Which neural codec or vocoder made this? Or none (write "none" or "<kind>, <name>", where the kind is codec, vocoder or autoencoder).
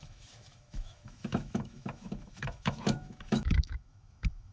autoencoder, DAC-VAE